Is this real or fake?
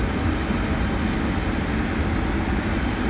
real